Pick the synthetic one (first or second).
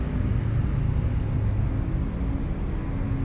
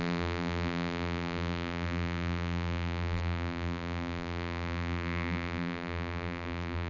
second